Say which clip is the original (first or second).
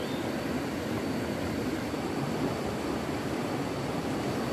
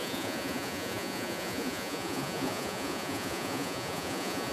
first